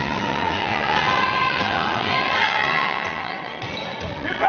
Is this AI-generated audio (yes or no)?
yes